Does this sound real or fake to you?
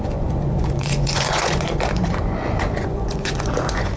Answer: fake